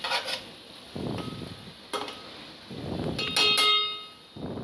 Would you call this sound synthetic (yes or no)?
no